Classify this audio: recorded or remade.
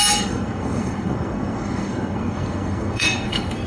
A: remade